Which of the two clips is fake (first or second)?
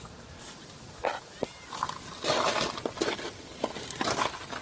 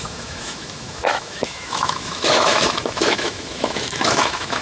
second